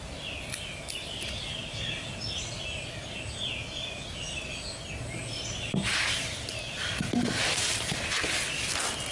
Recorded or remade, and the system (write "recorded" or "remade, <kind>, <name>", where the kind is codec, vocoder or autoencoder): recorded